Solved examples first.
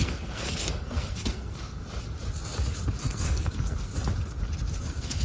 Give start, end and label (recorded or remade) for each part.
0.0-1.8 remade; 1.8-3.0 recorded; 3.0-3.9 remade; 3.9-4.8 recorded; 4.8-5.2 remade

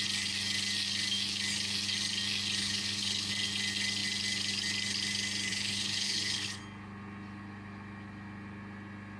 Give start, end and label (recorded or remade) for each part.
0.0-2.6 recorded; 2.6-3.3 remade; 3.3-5.5 recorded; 5.5-6.6 remade; 6.6-9.2 recorded

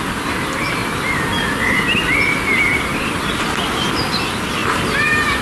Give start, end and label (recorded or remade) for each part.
0.0-5.4 recorded

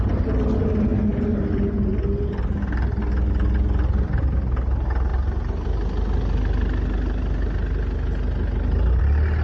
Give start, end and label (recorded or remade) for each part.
0.0-9.4 recorded

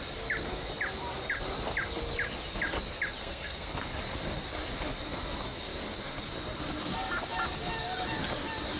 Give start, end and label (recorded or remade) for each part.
0.0-3.2 recorded; 3.2-3.7 remade; 3.7-8.8 recorded